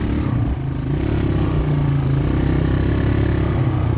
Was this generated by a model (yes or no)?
no